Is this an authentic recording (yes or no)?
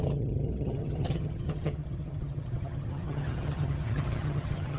no